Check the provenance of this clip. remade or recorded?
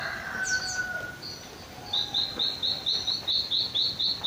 recorded